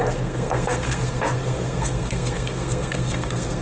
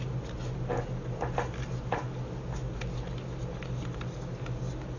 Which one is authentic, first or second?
second